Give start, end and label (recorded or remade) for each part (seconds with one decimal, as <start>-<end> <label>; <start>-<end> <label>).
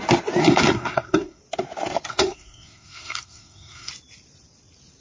0.0-0.4 recorded; 0.4-1.4 remade; 1.4-2.1 recorded; 2.1-3.9 remade; 3.9-5.0 recorded